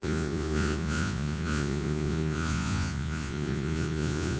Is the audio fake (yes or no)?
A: yes